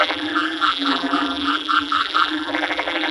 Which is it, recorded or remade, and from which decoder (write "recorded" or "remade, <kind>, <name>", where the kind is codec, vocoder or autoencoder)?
remade, vocoder, BigVGAN v2